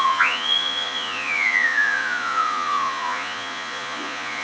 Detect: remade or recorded remade